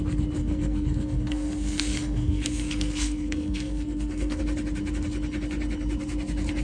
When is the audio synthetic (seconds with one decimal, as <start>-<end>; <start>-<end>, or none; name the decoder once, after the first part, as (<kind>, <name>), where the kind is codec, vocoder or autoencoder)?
0.4-4.4 (codec, SNAC)